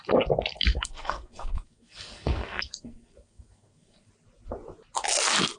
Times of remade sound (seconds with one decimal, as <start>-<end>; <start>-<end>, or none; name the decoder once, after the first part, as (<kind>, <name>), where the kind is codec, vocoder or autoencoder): 0.7-4.1 (codec, SNAC)